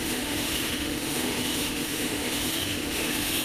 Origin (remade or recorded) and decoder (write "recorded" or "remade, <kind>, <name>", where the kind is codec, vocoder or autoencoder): remade, autoencoder, DAC-VAE